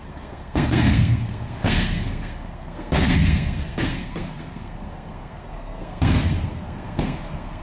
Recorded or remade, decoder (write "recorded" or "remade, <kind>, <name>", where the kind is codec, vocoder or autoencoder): remade, codec, SNAC